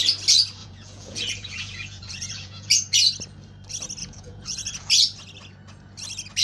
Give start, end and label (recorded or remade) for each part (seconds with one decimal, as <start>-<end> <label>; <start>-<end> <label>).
0.0-0.6 recorded; 0.6-2.7 remade; 2.7-4.0 recorded; 4.0-4.9 remade; 4.9-6.4 recorded

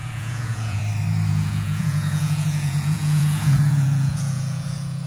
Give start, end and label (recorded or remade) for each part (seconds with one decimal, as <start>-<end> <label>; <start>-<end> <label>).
0.0-0.8 remade; 0.8-1.3 recorded; 1.3-5.1 remade

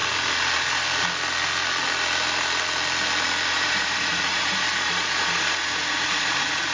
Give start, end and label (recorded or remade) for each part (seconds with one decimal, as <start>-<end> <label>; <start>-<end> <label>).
0.0-3.5 recorded; 3.5-6.7 remade

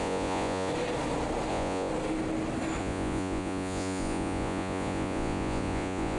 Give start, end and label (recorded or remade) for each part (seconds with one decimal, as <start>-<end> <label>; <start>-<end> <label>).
0.0-0.7 remade; 0.7-1.5 recorded; 1.5-1.9 remade; 1.9-2.8 recorded; 2.8-6.2 remade

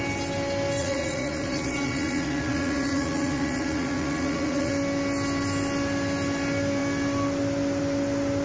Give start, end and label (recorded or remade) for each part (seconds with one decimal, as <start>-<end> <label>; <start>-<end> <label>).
0.0-0.8 recorded; 0.8-4.7 remade; 4.7-8.4 recorded